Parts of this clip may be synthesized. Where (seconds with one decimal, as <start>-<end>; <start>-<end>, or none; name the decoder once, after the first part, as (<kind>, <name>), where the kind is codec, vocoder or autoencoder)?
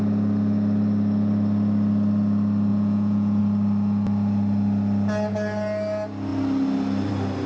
2.7-3.4 (vocoder, Vocos)